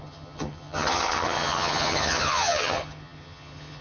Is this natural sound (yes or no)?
no